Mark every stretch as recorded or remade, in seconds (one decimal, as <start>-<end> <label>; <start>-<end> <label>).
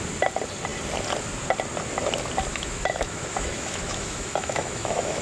0.0-2.5 recorded; 2.5-5.2 remade